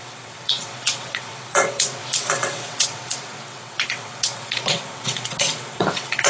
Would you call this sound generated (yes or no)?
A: yes